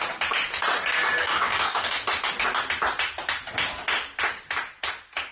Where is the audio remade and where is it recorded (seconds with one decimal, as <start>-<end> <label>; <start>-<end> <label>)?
0.0-1.2 recorded; 1.2-1.9 remade; 1.9-5.3 recorded